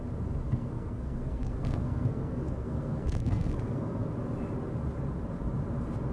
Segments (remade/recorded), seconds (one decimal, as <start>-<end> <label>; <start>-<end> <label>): 0.0-0.4 recorded; 0.4-4.1 remade; 4.1-6.1 recorded